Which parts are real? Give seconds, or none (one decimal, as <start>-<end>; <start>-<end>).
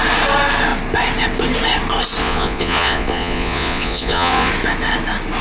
0.0-2.2; 4.5-5.4